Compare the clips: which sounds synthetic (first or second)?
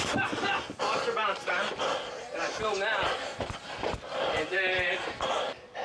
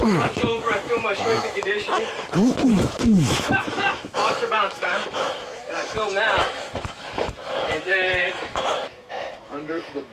second